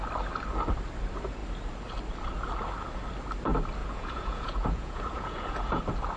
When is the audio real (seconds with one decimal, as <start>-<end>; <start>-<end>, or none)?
0.0-3.8; 5.8-6.2